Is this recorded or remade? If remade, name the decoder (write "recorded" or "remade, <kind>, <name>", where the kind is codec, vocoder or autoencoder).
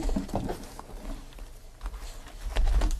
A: recorded